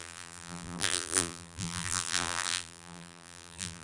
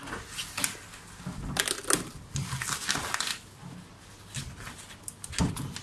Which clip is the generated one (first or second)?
first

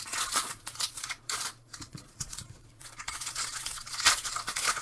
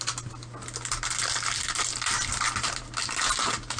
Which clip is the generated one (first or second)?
first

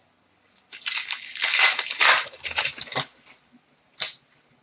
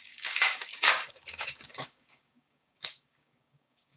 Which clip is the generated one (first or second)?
second